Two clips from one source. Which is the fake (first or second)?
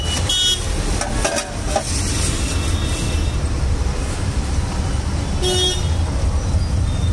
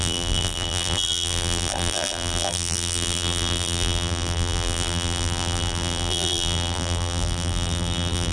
second